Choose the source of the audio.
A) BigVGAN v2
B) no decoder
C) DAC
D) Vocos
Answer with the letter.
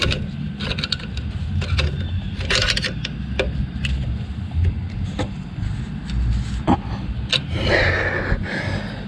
B